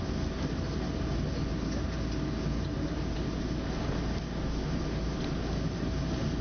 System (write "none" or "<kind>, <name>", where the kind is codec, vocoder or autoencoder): none